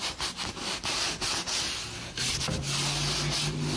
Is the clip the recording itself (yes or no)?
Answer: yes